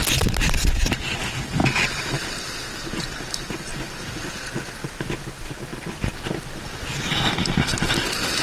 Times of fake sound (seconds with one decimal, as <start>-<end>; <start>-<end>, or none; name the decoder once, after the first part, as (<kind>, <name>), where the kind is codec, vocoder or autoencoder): none